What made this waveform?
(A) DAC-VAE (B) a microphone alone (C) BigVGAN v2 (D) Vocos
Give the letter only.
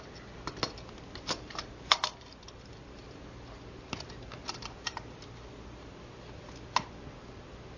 B